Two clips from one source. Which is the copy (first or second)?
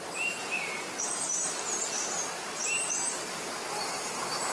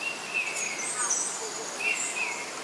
first